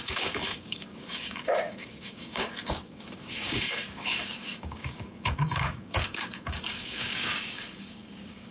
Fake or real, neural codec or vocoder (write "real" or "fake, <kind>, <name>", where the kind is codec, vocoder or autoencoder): fake, codec, DAC